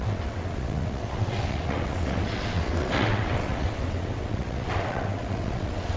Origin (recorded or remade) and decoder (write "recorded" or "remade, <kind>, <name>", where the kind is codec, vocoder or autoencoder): remade, vocoder, WaveNeXt